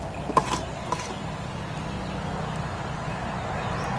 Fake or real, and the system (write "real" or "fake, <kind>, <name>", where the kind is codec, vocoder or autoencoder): real